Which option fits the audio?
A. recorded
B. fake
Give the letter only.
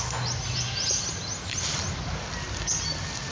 A